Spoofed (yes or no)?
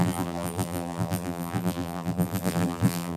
yes